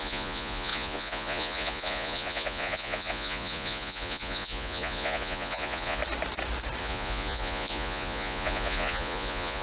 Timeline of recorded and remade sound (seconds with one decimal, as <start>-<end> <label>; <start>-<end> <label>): 0.0-6.0 remade; 6.0-6.8 recorded; 6.8-9.6 remade